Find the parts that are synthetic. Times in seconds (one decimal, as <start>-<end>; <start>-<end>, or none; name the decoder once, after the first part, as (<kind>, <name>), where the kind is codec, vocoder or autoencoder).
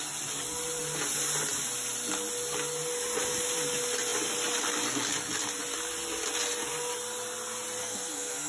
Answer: 7.8-8.5 (codec, SNAC)